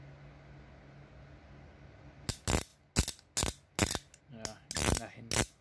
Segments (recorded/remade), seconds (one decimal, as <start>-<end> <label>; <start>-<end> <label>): 0.0-5.6 recorded